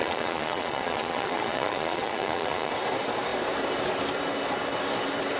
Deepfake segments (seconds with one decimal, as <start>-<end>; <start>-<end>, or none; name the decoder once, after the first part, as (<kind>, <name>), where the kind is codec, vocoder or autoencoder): 0.0-2.7 (vocoder, Vocos)